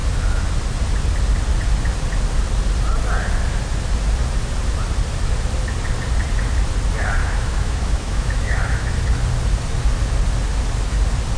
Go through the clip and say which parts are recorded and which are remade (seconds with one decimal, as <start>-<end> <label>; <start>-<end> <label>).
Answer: 0.0-7.2 recorded; 7.2-8.9 remade; 8.9-11.4 recorded